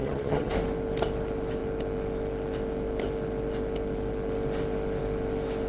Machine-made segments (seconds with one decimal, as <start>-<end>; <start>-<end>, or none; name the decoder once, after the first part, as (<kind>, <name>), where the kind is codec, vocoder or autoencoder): 0.0-0.5 (vocoder, HiFi-GAN)